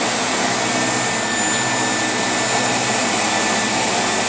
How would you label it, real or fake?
real